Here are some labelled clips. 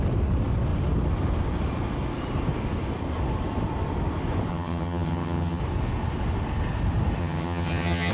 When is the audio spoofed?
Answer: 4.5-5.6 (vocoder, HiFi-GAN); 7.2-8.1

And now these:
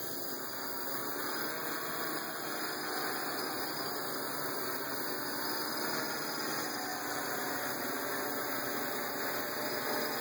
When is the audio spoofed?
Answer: none

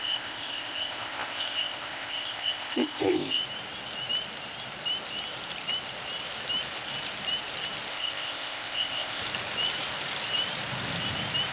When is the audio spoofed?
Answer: 0.0-3.4 (codec, ZipCodec); 7.9-9.2

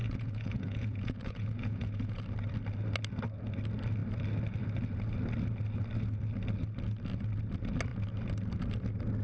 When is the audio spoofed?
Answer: 0.0-2.2 (vocoder, Vocos)

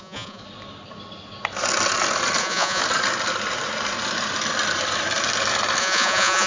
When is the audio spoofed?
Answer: 0.0-0.4 (vocoder, Vocos); 2.4-2.8; 5.8-6.5